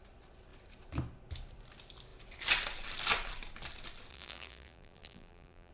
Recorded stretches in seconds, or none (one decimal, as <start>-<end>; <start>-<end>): 0.0-4.1